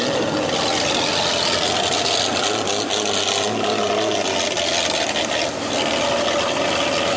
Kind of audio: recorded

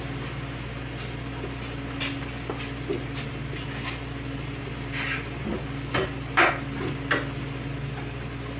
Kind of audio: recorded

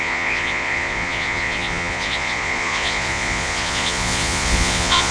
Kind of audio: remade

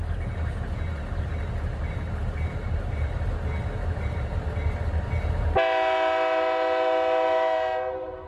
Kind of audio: recorded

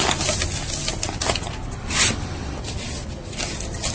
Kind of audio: recorded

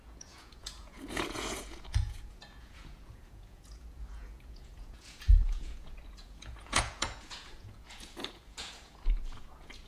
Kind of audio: remade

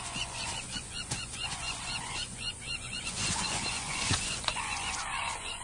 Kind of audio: remade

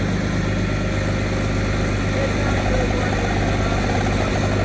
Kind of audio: recorded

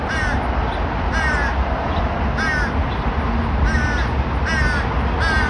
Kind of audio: recorded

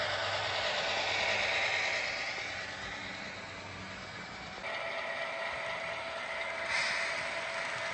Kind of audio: recorded